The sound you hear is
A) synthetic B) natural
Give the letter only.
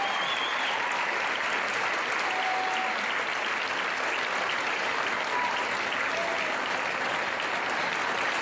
B